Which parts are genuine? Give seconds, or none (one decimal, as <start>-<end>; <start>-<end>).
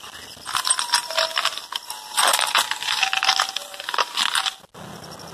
0.0-5.3